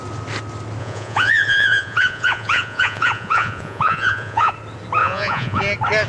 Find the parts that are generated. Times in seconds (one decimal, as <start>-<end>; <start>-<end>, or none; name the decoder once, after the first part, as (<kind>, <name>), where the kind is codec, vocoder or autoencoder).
0.8-4.5 (vocoder, Vocos); 5.0-5.6

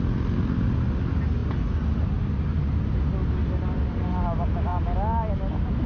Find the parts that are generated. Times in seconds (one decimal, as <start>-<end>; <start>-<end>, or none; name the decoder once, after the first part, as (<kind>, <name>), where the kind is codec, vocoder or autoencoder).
none